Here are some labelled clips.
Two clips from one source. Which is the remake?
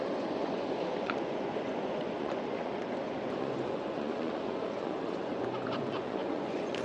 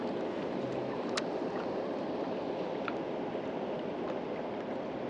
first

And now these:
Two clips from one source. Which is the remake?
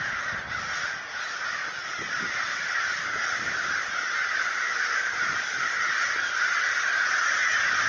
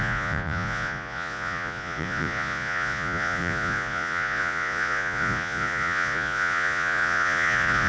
second